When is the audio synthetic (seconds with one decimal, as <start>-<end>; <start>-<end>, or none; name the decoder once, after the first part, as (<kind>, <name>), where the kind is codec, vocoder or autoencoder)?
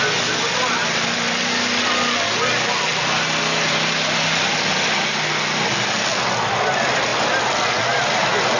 none